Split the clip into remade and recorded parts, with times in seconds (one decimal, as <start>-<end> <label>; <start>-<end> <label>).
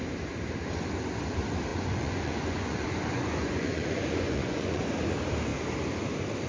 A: 0.0-1.7 recorded; 1.7-4.9 remade; 4.9-6.5 recorded